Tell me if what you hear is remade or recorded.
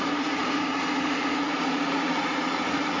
remade